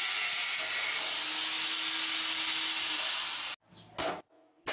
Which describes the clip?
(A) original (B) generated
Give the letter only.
A